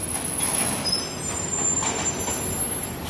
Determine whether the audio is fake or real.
real